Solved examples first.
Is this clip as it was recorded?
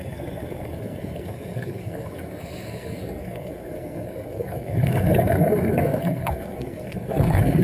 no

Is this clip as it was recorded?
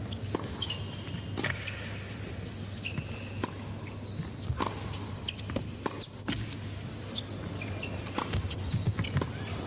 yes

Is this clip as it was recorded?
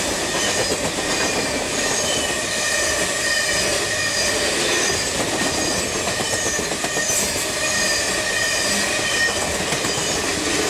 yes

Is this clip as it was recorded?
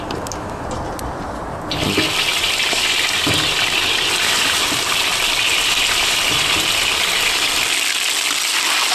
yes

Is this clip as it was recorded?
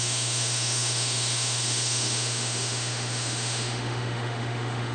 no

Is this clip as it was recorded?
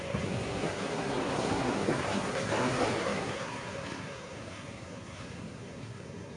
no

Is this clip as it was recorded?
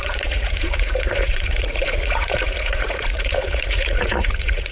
no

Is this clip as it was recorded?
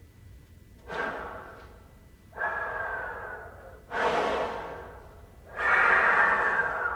yes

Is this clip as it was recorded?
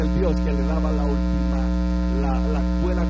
yes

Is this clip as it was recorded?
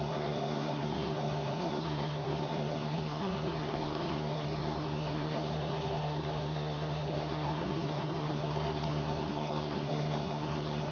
no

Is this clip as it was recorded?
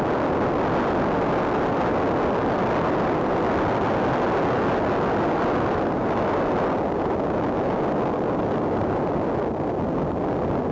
yes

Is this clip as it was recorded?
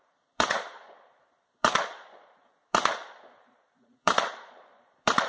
no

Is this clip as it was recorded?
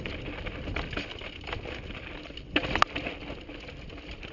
yes